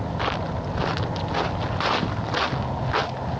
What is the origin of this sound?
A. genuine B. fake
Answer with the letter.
A